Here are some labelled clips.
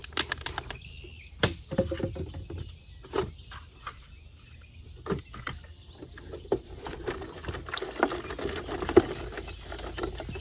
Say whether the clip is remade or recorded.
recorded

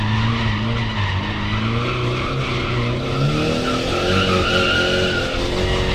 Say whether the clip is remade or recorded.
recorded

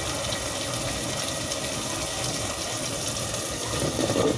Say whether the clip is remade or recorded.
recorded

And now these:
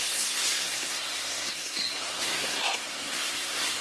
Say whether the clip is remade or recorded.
remade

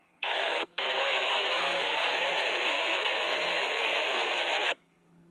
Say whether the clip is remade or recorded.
remade